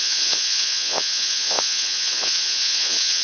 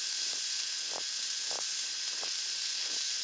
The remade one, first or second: first